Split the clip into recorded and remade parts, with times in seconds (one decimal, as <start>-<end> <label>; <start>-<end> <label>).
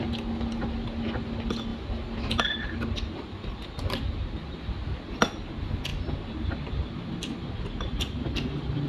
0.0-8.9 recorded